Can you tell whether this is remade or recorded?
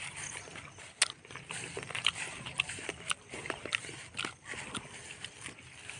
recorded